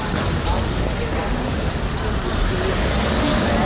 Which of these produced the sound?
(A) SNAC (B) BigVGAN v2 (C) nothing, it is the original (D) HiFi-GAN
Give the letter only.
C